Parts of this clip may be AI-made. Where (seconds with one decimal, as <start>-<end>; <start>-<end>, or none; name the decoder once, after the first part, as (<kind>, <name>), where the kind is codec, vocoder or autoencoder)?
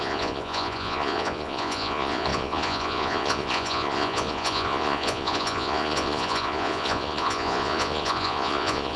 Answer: 0.0-9.0 (vocoder, Vocos)